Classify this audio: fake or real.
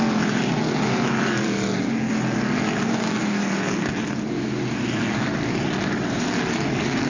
real